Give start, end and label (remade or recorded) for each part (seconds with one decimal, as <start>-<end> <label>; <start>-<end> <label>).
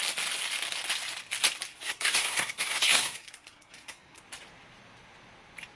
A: 0.0-1.7 recorded; 1.7-4.2 remade; 4.2-5.8 recorded